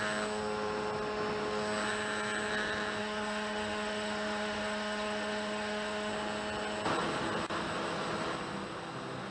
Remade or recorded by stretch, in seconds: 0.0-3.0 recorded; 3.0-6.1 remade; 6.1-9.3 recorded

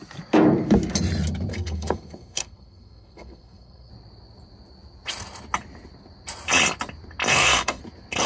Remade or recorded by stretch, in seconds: 0.0-1.5 recorded; 1.5-3.9 remade; 3.9-7.3 recorded; 7.3-7.8 remade; 7.8-8.3 recorded

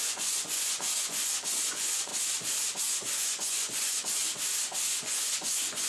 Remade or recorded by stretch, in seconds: 0.0-2.1 remade; 2.1-2.8 recorded; 2.8-4.2 remade; 4.2-4.9 recorded; 4.9-5.9 remade

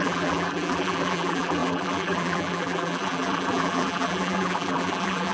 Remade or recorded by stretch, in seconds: 0.0-5.3 remade

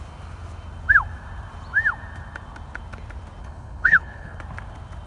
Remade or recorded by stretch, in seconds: 0.0-3.4 recorded; 3.4-4.4 remade; 4.4-5.1 recorded

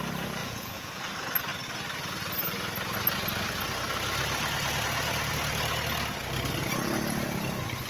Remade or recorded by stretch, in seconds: 0.0-0.4 recorded; 0.4-1.0 remade; 1.0-7.9 recorded

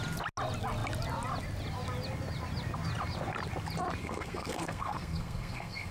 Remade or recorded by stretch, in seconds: 0.0-4.0 recorded; 4.0-5.9 remade

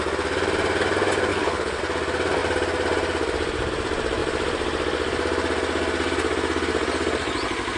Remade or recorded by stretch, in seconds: 0.0-1.3 recorded; 1.3-1.8 remade; 1.8-7.8 recorded